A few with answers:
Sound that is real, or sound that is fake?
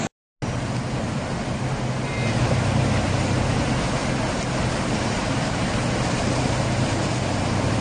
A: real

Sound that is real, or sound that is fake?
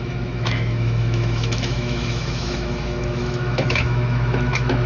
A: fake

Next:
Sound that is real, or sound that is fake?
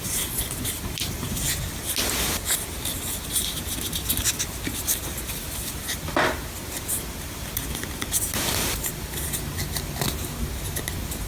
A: real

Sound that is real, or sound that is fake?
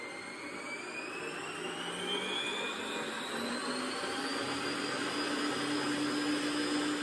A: real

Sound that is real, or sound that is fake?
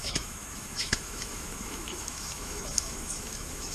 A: fake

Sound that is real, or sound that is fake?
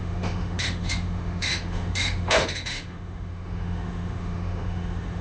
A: fake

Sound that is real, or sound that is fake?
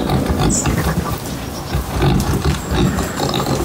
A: real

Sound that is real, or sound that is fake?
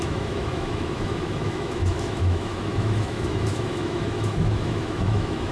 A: fake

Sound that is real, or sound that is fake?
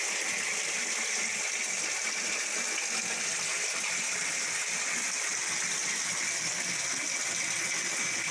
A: real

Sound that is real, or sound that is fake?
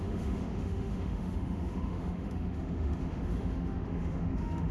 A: fake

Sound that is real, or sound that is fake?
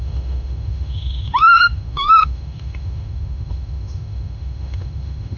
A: fake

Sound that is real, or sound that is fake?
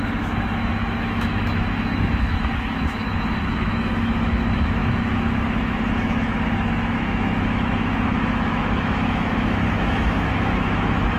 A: fake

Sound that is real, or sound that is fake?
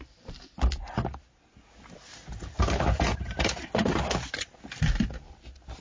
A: real